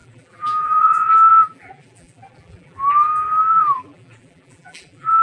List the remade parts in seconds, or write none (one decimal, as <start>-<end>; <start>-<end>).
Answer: 0.0-2.8; 3.5-5.2